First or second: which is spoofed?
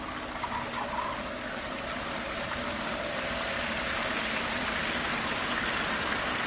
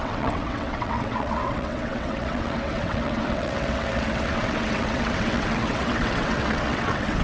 second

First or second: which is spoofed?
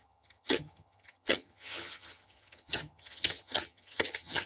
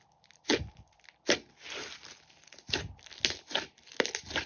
first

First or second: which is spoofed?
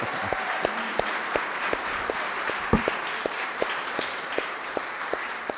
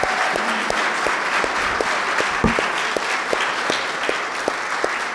first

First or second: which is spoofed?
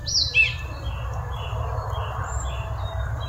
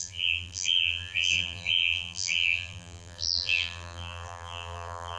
second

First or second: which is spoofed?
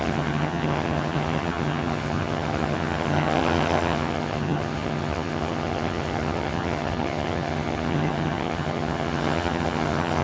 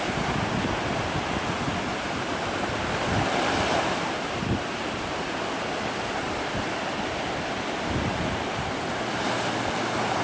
first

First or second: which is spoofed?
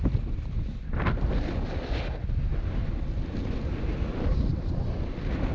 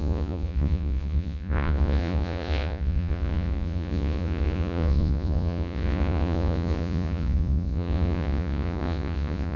second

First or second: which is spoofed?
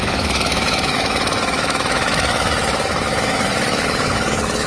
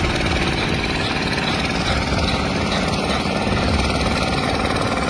first